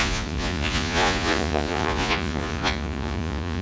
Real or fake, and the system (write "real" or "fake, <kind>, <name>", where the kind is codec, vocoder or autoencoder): fake, vocoder, Vocos